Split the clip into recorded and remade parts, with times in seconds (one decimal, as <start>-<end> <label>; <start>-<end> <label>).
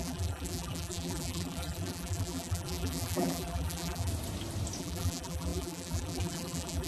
0.0-4.1 remade; 4.1-4.8 recorded; 4.8-6.9 remade